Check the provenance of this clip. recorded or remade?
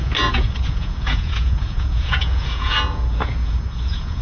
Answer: remade